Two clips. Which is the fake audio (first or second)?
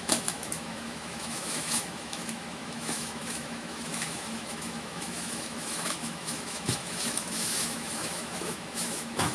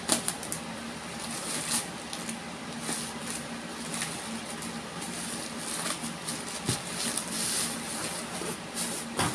first